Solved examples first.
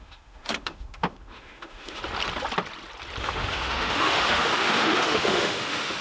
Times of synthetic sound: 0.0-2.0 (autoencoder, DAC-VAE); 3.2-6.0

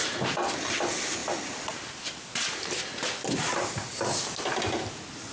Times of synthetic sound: none

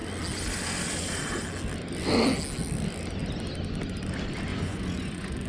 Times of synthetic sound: 4.5-5.5 (vocoder, Vocos)

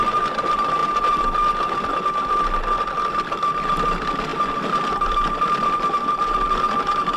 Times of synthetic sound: 0.0-7.2 (vocoder, BigVGAN v2)

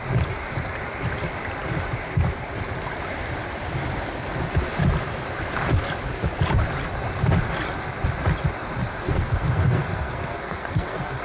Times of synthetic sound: 8.9-11.2 (codec, SNAC)